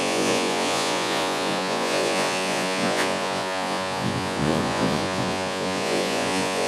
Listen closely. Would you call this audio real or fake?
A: fake